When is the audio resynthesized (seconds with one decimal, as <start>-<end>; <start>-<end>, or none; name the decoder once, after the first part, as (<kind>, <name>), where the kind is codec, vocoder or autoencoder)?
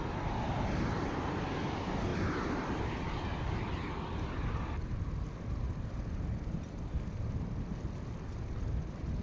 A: 2.1-2.8 (vocoder, BigVGAN v2)